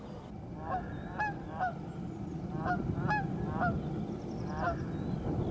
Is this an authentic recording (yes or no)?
yes